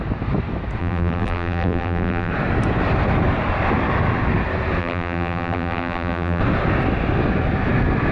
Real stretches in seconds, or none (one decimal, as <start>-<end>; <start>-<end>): 0.0-0.8; 2.3-4.8; 6.4-8.1